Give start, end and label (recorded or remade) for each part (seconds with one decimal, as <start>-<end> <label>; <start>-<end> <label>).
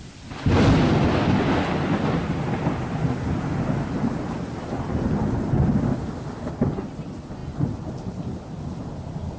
0.0-9.4 recorded